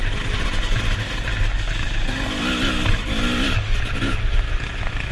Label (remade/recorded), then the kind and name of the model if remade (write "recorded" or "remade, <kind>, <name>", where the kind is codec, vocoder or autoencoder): recorded